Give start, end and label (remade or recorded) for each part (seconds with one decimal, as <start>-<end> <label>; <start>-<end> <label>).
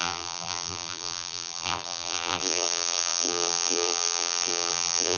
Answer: 0.0-5.2 remade